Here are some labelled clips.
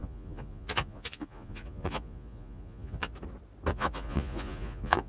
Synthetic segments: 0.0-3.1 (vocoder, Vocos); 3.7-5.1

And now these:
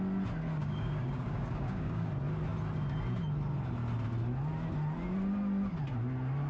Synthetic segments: 0.6-2.1 (codec, DAC)